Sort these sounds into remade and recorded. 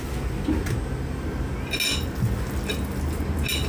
recorded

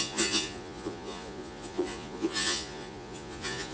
remade